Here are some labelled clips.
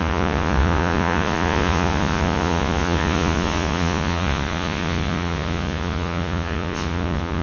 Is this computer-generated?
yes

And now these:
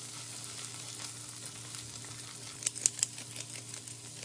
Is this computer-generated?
no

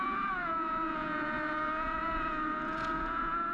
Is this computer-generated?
yes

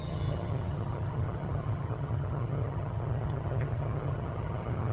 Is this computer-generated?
yes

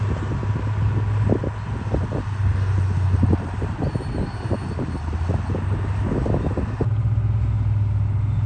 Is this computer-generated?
no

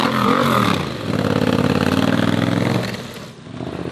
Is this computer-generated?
no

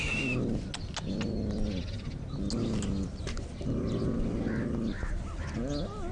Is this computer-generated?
no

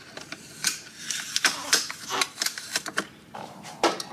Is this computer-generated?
yes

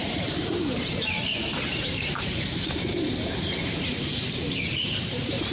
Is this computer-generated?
yes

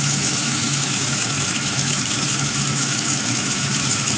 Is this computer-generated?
yes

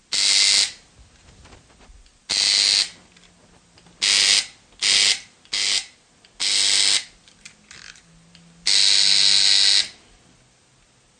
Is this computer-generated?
no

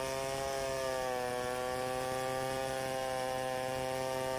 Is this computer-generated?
no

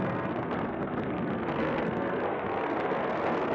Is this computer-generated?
yes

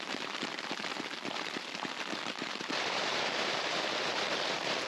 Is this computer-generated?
yes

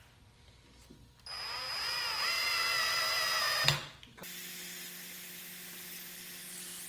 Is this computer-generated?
no